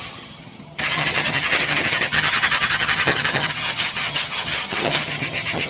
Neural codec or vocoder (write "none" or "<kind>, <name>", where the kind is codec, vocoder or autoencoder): vocoder, HiFi-GAN